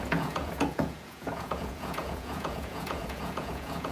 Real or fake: fake